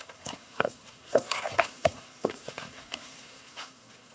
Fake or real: fake